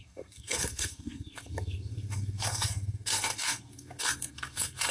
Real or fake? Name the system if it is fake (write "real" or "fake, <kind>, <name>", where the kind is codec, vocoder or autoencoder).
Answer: fake, codec, SNAC